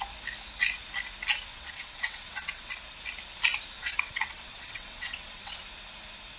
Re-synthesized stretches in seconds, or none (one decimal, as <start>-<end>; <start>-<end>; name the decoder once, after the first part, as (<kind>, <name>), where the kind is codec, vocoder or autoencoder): 1.5-2.7 (vocoder, WaveNeXt); 3.8-5.6